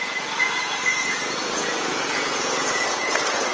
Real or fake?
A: fake